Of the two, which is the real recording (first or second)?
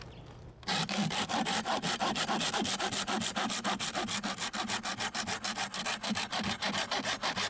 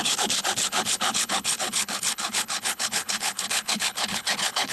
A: first